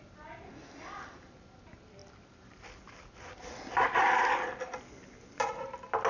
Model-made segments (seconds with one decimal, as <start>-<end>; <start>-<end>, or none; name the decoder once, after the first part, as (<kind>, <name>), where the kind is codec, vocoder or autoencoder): none